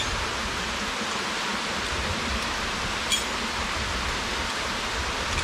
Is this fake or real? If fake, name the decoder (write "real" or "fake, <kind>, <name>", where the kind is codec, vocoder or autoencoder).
real